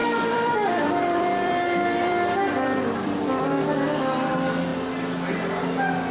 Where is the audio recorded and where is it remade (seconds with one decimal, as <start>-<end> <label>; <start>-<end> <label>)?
0.0-3.7 remade; 3.7-6.1 recorded